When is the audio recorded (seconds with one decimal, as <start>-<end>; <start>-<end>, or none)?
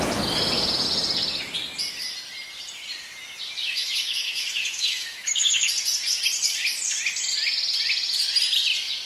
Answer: 0.0-3.6; 5.7-9.1